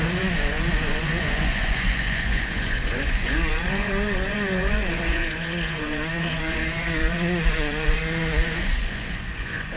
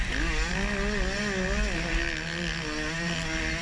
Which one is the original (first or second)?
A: second